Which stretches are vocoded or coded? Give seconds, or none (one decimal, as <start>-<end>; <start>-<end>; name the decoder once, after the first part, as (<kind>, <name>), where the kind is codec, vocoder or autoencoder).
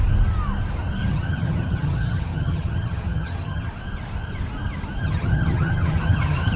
1.0-3.7 (vocoder, HiFi-GAN); 5.0-6.6